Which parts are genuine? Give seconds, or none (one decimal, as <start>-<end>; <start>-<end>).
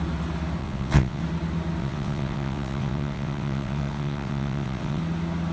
0.0-0.6; 1.2-1.8; 5.0-5.5